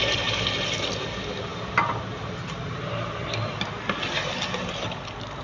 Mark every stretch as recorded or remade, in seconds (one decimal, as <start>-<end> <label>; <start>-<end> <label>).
0.0-5.4 recorded